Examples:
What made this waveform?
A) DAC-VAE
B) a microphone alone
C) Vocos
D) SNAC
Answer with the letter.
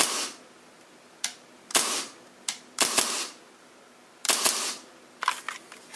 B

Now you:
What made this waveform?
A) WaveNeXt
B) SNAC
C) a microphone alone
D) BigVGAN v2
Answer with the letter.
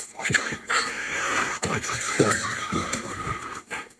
B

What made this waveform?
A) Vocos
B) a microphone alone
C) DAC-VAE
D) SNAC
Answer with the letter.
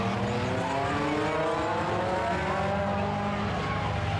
B